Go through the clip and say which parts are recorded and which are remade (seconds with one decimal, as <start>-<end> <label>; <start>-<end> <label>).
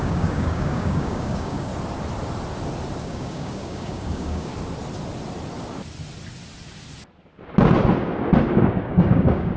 0.0-1.7 remade; 1.7-3.0 recorded; 3.0-4.5 remade; 4.5-8.5 recorded; 8.5-9.6 remade